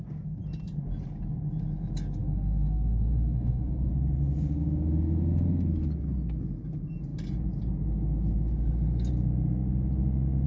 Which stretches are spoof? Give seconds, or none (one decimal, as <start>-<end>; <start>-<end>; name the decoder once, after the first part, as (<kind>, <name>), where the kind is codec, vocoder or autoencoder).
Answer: 2.2-3.9 (autoencoder, DAC-VAE)